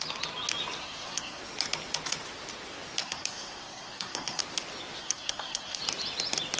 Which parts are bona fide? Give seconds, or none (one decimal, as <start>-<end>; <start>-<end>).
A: 0.0-0.8; 1.4-3.0; 4.4-5.0; 5.8-6.6